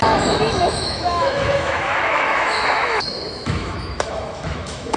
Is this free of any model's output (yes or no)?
no